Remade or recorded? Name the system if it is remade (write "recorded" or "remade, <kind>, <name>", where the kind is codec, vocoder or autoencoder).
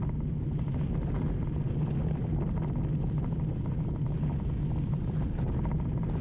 recorded